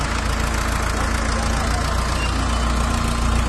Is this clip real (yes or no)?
yes